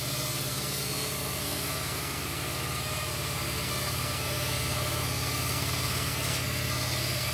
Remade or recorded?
remade